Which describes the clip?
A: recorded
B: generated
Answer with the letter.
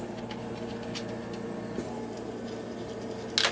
A